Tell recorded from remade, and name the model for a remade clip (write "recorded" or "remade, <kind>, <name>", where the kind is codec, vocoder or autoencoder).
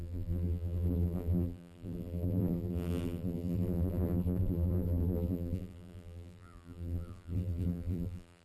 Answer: remade, vocoder, BigVGAN v2